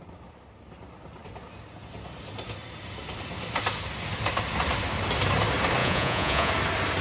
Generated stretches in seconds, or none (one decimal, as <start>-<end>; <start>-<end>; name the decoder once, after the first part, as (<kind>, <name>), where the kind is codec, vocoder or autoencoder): 5.8-6.5 (vocoder, Vocos)